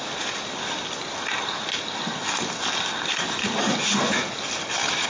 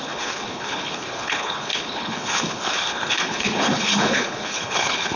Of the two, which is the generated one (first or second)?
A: second